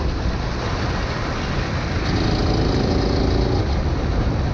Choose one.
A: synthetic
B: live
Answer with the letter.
B